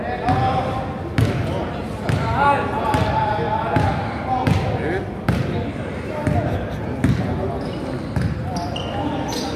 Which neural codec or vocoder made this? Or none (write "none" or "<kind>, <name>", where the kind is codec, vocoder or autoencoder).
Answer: none